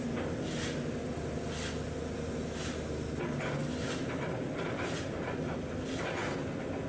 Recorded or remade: recorded